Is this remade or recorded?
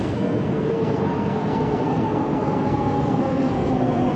remade